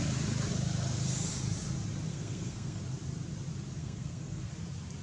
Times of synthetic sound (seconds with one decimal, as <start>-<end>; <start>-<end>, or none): 2.1-2.8; 3.8-4.5